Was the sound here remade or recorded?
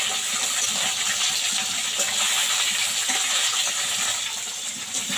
recorded